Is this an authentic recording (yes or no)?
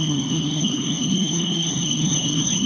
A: no